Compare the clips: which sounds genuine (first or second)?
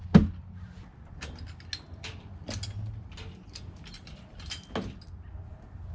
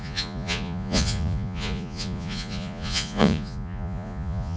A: first